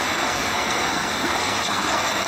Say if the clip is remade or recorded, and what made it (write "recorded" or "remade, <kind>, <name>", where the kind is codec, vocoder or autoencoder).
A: remade, codec, SNAC